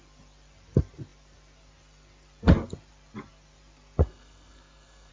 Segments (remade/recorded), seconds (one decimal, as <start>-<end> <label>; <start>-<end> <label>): 0.0-4.0 recorded; 4.0-5.1 remade